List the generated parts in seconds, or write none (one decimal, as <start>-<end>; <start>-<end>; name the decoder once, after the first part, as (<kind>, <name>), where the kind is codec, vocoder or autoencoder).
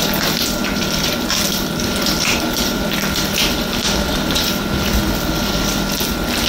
0.6-4.5 (vocoder, BigVGAN v2); 5.0-5.9